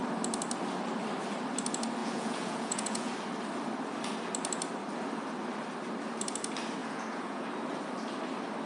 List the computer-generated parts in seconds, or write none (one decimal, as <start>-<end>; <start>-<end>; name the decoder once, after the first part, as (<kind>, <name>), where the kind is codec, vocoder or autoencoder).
2.0-3.1 (vocoder, Vocos); 6.8-7.5